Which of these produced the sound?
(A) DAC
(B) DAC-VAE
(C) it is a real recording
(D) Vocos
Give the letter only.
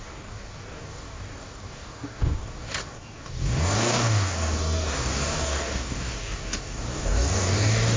A